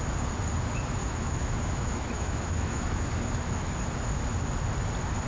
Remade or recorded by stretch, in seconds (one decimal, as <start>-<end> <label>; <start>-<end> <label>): 0.0-1.0 recorded; 1.0-3.7 remade; 3.7-5.3 recorded